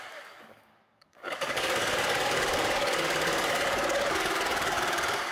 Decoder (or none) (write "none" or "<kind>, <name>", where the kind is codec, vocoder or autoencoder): codec, DAC